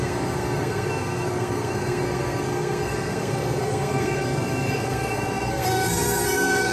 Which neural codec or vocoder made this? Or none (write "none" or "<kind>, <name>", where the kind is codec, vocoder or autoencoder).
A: codec, SNAC